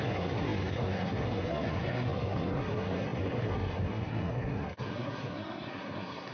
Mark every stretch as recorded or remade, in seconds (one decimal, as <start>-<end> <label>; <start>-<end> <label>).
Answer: 0.0-6.3 remade